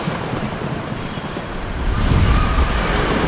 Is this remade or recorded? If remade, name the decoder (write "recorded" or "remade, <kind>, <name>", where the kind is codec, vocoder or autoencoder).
remade, vocoder, BigVGAN v2